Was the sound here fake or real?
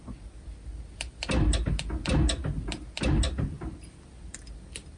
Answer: real